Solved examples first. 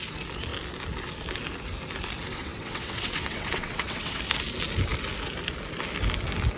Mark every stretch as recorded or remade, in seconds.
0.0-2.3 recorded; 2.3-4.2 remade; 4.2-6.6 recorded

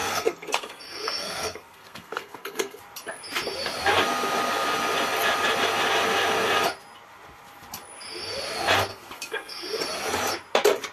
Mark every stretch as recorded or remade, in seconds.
0.0-2.8 remade; 2.8-8.9 recorded; 8.9-9.8 remade; 9.8-10.9 recorded

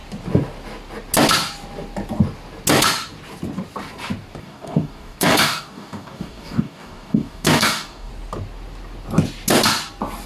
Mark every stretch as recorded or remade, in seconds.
0.0-4.4 recorded; 4.4-8.1 remade; 8.1-10.3 recorded

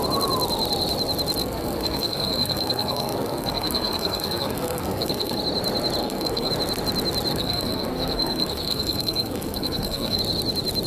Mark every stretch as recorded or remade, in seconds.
0.0-1.4 recorded; 1.4-5.4 remade; 5.4-6.0 recorded; 6.0-6.5 remade; 6.5-7.3 recorded; 7.3-10.2 remade; 10.2-10.9 recorded

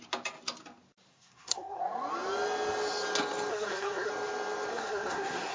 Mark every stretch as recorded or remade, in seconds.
0.0-1.1 recorded; 1.1-1.8 remade; 1.8-3.5 recorded; 3.5-4.1 remade; 4.1-4.7 recorded; 4.7-5.5 remade

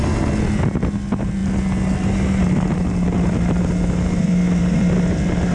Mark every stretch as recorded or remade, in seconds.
0.0-5.5 recorded

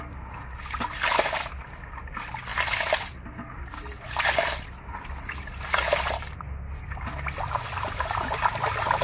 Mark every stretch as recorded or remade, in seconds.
0.0-9.0 recorded

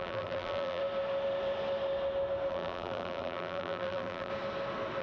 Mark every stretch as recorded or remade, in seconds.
0.0-0.8 remade; 0.8-2.5 recorded; 2.5-4.3 remade; 4.3-5.0 recorded